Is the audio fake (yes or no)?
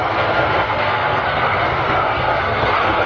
yes